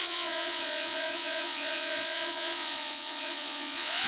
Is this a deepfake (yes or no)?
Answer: yes